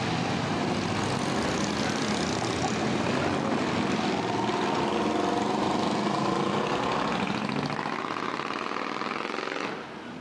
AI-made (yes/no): no